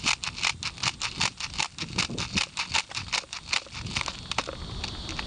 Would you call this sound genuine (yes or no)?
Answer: yes